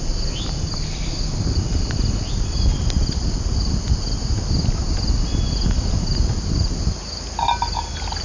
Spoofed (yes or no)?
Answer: no